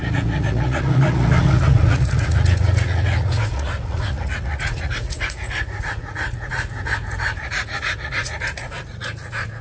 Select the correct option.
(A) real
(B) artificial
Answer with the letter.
B